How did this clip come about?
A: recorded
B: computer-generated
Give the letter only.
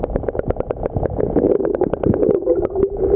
A